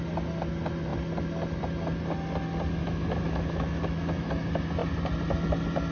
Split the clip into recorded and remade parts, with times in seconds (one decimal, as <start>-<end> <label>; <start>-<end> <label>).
0.0-2.8 recorded; 2.8-4.3 remade; 4.3-5.9 recorded